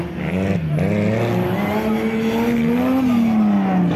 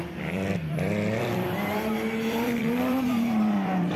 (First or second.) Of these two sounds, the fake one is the second